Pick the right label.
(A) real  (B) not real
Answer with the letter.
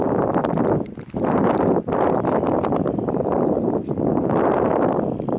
A